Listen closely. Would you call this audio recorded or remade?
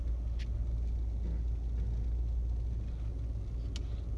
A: recorded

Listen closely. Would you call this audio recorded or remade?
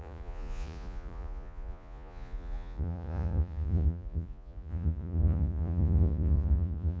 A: remade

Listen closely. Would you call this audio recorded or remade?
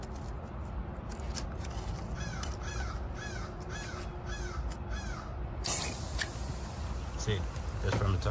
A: recorded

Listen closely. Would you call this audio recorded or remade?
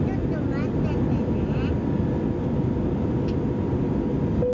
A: recorded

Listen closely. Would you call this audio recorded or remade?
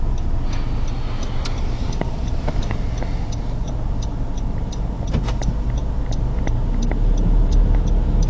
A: recorded